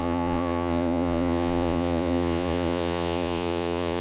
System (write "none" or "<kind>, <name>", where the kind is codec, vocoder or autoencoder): vocoder, Vocos